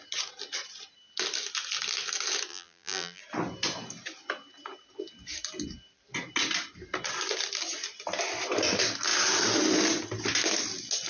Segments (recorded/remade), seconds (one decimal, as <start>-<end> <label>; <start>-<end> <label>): 0.0-2.5 recorded; 2.5-3.2 remade; 3.2-11.1 recorded